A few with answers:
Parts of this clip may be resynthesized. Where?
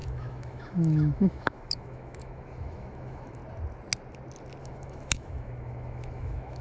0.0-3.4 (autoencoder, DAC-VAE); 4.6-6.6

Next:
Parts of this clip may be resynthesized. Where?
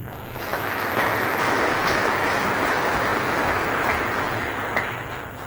0.0-5.5 (autoencoder, DAC-VAE)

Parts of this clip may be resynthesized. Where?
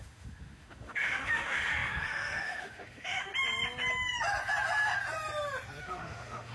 0.0-3.3 (autoencoder, DAC-VAE); 5.8-6.5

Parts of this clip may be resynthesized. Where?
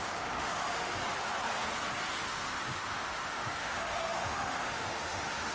0.0-1.0 (autoencoder, DAC-VAE); 2.3-5.5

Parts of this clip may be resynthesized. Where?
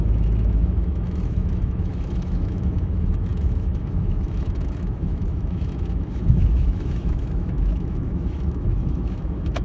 0.0-9.6 (autoencoder, DAC-VAE)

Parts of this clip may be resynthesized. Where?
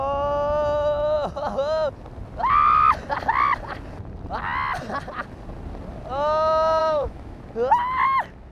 6.8-7.4 (autoencoder, DAC-VAE)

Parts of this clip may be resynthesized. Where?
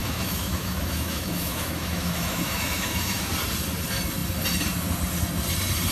0.0-3.3 (autoencoder, DAC-VAE)